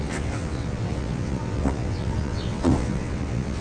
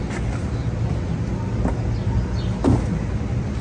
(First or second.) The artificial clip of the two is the first